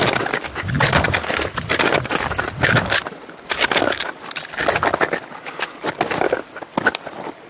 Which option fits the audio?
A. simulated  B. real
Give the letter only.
B